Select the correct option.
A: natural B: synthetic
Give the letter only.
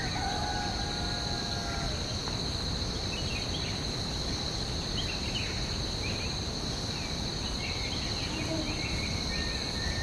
A